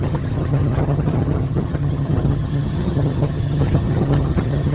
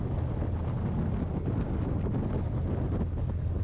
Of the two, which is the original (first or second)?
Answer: second